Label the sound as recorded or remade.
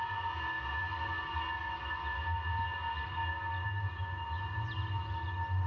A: recorded